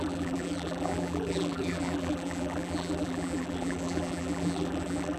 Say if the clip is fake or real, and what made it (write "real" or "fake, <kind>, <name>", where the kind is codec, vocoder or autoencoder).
fake, vocoder, BigVGAN v2